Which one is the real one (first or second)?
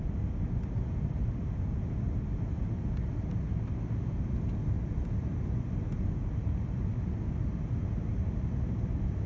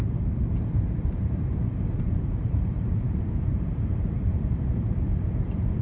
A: first